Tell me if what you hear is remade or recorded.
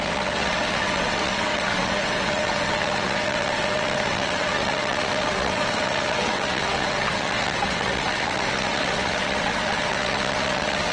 remade